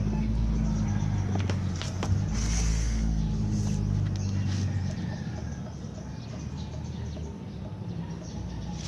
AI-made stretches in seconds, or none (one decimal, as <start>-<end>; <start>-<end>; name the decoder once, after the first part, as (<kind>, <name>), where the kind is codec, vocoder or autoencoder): 2.7-3.2 (codec, SNAC)